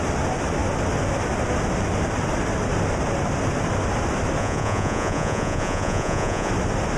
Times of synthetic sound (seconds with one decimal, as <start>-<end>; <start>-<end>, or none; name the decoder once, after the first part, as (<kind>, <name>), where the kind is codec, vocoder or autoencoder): 4.4-6.5 (vocoder, Vocos)